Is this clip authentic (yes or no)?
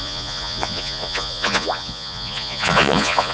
no